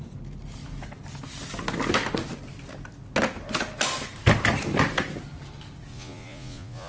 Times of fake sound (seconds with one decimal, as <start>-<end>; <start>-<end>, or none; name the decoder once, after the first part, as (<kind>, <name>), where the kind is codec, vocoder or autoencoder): 5.9-6.9 (vocoder, Vocos)